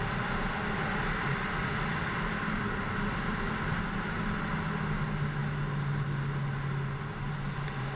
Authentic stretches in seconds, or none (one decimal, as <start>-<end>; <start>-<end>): 0.0-8.0